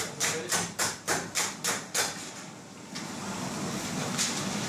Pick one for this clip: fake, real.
real